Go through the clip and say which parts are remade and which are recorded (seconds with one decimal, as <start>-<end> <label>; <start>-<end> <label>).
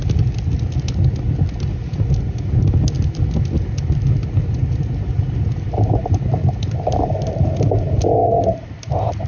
0.0-9.3 recorded